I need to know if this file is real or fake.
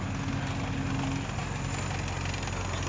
real